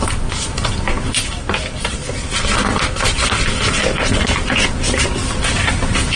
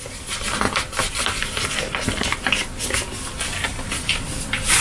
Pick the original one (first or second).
second